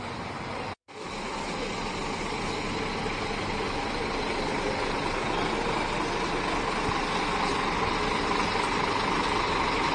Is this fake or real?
real